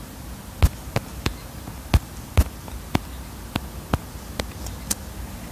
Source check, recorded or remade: recorded